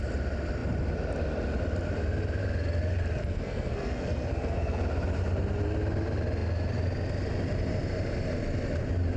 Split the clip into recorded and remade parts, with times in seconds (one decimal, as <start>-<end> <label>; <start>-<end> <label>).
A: 0.0-3.2 recorded; 3.2-4.8 remade; 4.8-9.2 recorded